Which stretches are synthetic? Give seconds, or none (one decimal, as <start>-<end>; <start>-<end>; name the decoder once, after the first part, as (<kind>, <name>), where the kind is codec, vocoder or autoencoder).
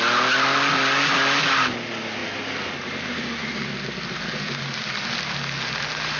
none